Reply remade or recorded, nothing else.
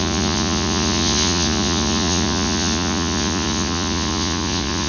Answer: remade